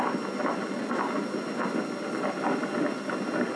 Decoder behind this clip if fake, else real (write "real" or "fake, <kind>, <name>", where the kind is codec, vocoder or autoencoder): real